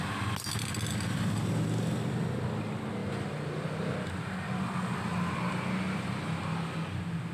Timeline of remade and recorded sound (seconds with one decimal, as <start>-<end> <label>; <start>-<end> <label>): 0.0-7.3 recorded